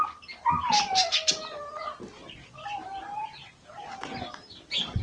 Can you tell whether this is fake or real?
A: real